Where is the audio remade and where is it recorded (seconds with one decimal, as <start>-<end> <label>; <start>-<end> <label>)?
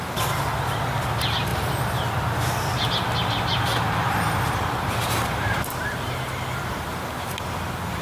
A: 0.0-3.7 recorded; 3.7-6.1 remade; 6.1-8.0 recorded